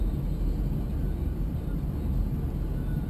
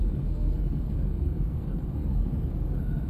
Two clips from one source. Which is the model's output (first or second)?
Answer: second